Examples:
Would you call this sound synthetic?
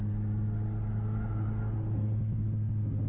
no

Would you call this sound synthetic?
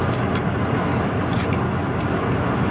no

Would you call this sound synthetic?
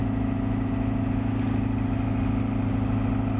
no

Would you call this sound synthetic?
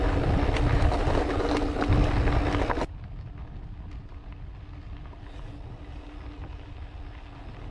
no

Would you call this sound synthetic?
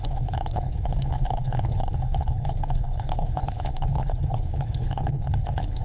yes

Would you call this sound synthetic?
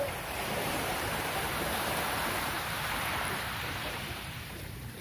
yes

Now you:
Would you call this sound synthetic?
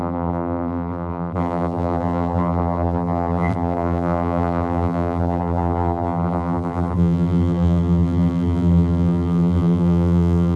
yes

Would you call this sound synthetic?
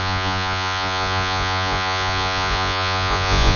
yes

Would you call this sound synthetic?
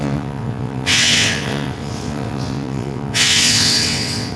yes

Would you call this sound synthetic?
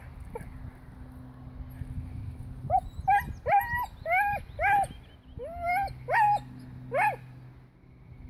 no